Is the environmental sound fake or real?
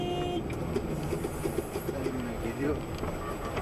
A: real